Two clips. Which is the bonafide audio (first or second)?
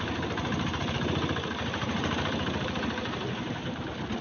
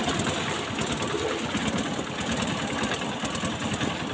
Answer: second